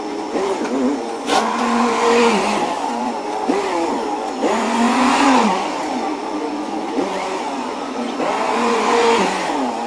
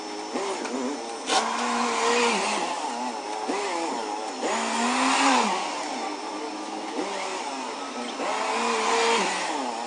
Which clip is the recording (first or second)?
second